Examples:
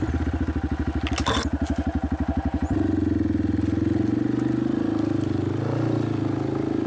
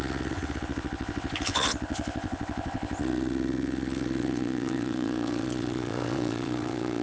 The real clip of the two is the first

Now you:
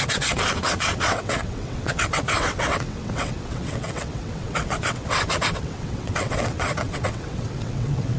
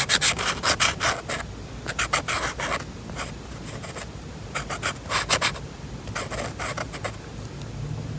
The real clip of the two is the second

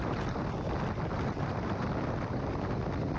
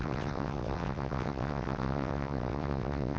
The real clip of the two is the first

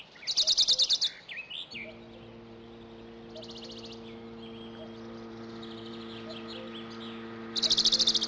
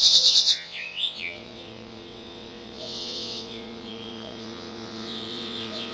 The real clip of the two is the first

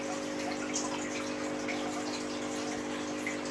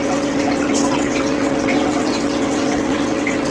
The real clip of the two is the first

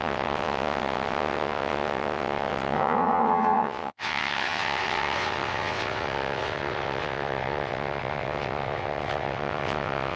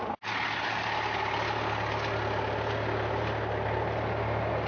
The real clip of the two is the second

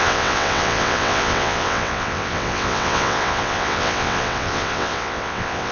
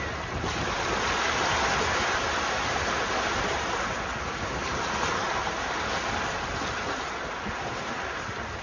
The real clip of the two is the second